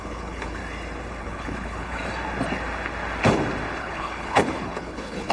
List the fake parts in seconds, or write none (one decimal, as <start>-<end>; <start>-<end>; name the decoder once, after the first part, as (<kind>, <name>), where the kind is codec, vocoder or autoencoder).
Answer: 0.0-0.6 (codec, HILCodec); 1.2-2.0; 3.8-5.3